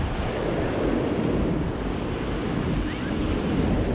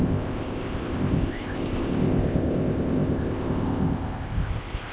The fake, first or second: second